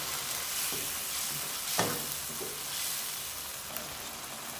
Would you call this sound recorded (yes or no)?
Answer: yes